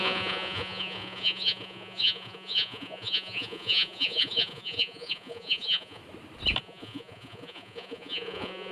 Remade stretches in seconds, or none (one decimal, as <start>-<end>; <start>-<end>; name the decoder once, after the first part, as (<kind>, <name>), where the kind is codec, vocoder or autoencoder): 0.0-6.0 (vocoder, Vocos); 6.6-8.7